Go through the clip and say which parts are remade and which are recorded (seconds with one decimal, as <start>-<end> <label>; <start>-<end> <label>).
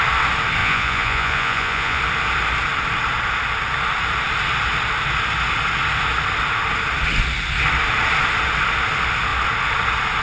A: 0.0-0.6 recorded; 0.6-2.0 remade; 2.0-10.2 recorded